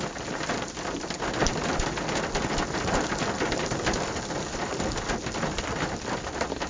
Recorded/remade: recorded